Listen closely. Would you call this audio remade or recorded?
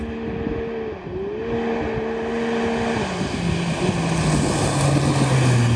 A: recorded